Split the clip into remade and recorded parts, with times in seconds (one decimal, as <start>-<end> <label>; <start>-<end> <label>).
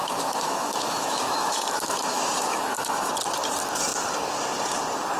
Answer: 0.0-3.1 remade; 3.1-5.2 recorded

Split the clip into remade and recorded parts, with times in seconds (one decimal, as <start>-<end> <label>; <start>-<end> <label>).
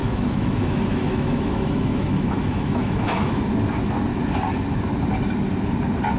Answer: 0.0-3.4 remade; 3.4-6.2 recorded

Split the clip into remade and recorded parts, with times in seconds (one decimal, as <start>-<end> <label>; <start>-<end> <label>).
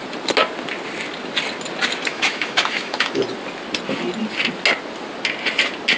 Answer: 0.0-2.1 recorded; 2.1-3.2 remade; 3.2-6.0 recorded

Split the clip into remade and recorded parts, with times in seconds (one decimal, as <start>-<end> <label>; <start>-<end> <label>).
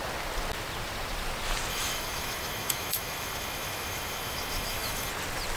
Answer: 0.0-1.7 recorded; 1.7-5.1 remade; 5.1-5.6 recorded